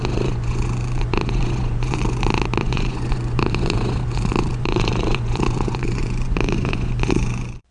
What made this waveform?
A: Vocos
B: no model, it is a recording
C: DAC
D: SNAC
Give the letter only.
A